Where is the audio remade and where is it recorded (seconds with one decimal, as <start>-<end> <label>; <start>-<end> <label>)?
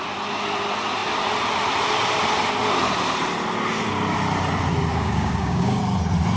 0.0-4.9 recorded; 4.9-5.8 remade; 5.8-6.4 recorded